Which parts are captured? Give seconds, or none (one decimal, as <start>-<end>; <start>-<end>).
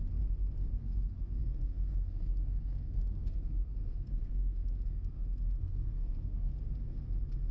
0.0-0.8; 6.5-7.5